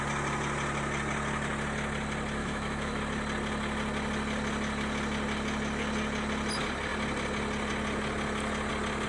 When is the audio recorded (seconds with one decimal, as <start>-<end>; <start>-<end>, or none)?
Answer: 0.0-2.4; 3.0-9.1